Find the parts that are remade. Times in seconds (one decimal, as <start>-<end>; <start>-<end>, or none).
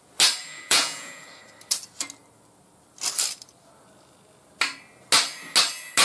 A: 0.4-1.2